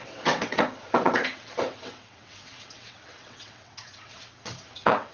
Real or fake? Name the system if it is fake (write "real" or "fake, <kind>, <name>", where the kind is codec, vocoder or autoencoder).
fake, vocoder, WaveNeXt